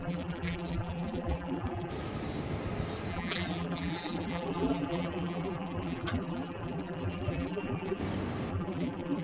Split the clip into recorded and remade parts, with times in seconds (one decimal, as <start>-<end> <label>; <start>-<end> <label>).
0.0-1.9 remade; 1.9-3.1 recorded; 3.1-8.0 remade; 8.0-8.5 recorded; 8.5-9.2 remade